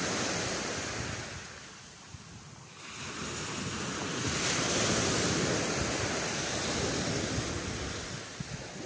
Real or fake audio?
real